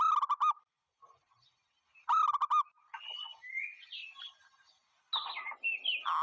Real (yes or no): yes